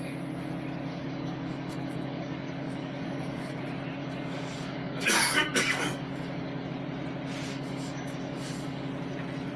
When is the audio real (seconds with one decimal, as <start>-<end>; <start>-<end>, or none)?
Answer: 0.0-0.9; 3.6-4.0; 6.7-7.5; 8.9-9.6